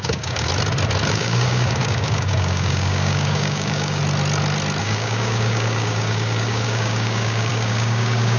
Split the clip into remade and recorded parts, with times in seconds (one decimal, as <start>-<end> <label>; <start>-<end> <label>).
0.0-0.5 remade; 0.5-1.1 recorded; 1.1-4.0 remade; 4.0-4.8 recorded; 4.8-8.4 remade